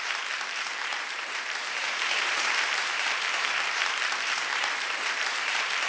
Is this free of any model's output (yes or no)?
no